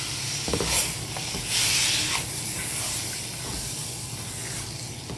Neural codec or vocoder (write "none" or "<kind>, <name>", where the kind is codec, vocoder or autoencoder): none